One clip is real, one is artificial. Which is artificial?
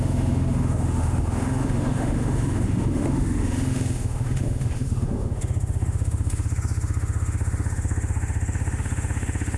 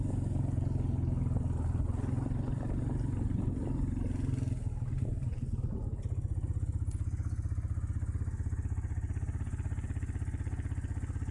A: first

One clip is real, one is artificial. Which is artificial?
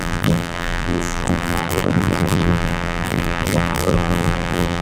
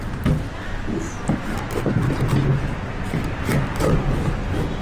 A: first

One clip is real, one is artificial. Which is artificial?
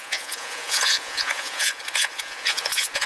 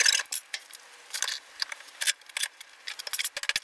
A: first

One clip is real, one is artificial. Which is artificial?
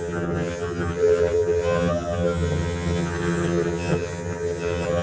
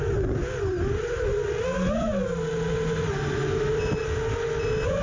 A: first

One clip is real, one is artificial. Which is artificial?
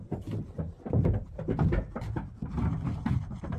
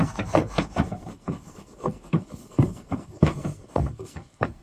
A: second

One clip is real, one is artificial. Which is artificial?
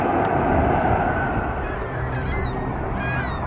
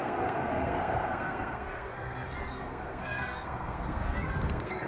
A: second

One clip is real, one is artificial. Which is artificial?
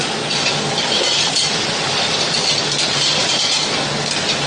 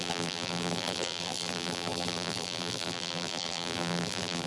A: second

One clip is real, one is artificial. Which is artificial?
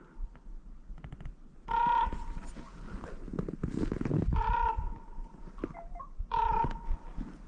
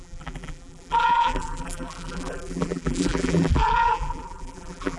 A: second